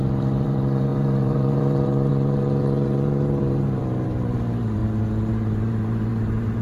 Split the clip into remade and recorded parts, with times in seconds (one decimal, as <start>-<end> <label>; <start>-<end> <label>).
0.0-4.8 remade; 4.8-5.3 recorded; 5.3-6.6 remade